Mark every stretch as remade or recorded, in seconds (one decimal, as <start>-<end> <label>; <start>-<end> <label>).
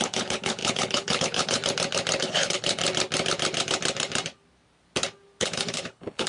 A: 0.0-1.6 remade; 1.6-2.2 recorded; 2.2-2.8 remade; 2.8-5.4 recorded; 5.4-6.3 remade